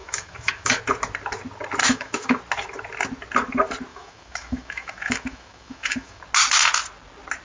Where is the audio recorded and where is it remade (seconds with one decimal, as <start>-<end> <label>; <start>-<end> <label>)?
0.0-0.8 remade; 0.8-1.8 recorded; 1.8-2.4 remade; 2.4-3.9 recorded; 3.9-6.2 remade; 6.2-7.4 recorded